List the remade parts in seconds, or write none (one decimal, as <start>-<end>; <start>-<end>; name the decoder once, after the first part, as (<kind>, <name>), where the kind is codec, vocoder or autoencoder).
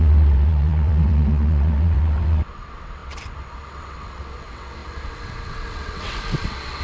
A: 0.0-6.8 (vocoder, WaveNeXt)